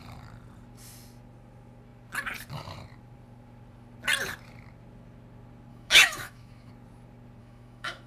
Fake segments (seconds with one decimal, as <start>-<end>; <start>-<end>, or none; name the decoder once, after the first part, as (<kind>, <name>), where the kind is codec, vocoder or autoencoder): 5.7-6.7 (autoencoder, DAC-VAE); 7.4-8.1